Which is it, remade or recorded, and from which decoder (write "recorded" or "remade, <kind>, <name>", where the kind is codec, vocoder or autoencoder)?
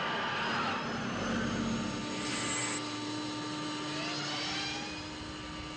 recorded